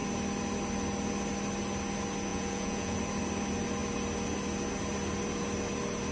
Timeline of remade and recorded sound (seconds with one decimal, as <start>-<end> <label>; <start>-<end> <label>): 0.0-2.3 recorded; 2.3-3.0 remade; 3.0-6.1 recorded